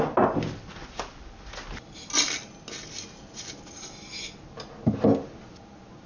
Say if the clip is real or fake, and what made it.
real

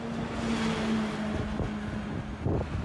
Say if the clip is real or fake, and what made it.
real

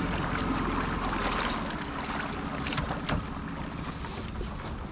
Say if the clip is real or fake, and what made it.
real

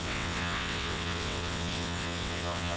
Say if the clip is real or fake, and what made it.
fake, vocoder, WaveNeXt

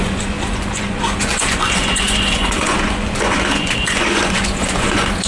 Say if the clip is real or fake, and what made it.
fake, vocoder, Vocos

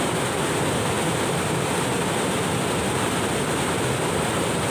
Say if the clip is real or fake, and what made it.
real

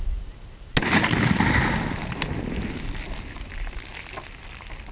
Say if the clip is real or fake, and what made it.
real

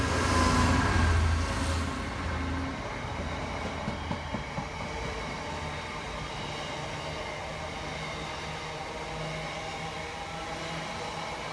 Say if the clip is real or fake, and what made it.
real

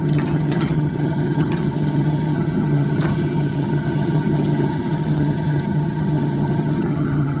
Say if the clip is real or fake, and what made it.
fake, vocoder, HiFi-GAN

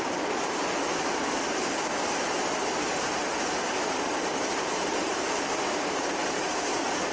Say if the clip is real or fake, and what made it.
fake, vocoder, BigVGAN v2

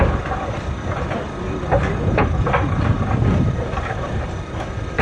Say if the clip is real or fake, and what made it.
real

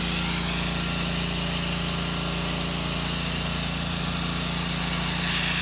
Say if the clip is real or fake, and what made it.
real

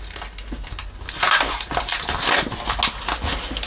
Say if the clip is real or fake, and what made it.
real